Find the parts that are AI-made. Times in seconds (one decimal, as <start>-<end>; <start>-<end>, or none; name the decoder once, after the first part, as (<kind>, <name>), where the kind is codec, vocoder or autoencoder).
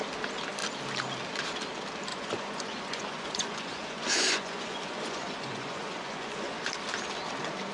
2.1-6.7 (vocoder, Vocos)